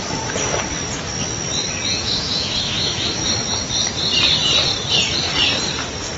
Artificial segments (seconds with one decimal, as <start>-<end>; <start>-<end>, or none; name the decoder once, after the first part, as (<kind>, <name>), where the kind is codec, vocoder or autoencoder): 1.9-3.3 (autoencoder, DAC-VAE)